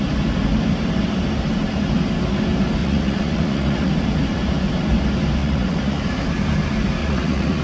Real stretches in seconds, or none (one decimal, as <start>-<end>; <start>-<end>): 0.0-2.8; 3.9-5.4; 6.0-7.0